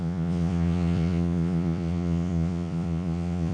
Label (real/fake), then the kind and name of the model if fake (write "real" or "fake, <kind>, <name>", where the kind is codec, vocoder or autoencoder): fake, vocoder, Vocos